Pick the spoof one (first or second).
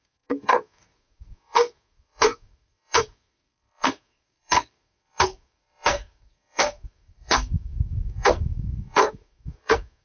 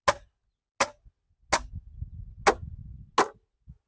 first